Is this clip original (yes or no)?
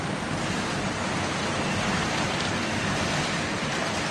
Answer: yes